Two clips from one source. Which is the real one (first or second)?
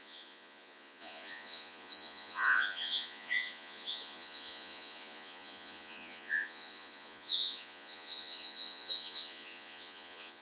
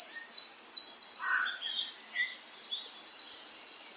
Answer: second